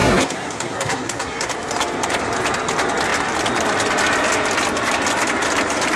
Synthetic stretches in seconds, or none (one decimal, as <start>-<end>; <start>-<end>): 0.0-1.5